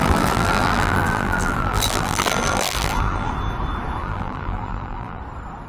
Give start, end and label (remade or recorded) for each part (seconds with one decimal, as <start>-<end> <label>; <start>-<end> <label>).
0.0-3.3 remade; 3.3-4.0 recorded; 4.0-5.2 remade; 5.2-5.7 recorded